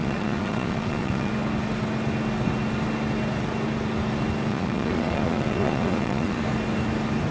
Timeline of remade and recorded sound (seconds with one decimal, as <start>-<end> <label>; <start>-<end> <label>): 0.0-1.3 remade; 1.3-4.5 recorded; 4.5-6.4 remade; 6.4-7.3 recorded